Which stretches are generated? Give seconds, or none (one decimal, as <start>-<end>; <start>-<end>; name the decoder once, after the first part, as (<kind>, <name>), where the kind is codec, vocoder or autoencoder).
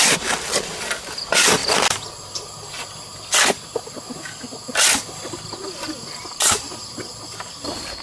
none